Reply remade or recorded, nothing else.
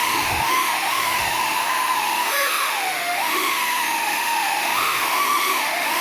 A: remade